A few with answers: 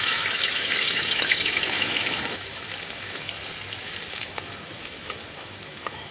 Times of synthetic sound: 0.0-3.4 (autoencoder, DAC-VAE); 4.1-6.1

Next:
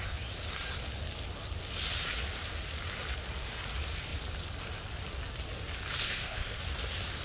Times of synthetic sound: 6.0-6.6 (codec, ZipCodec)

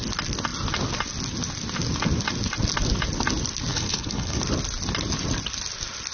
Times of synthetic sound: 3.7-4.4 (codec, HILCodec)